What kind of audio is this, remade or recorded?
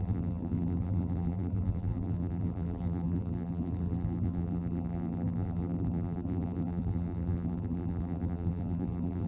remade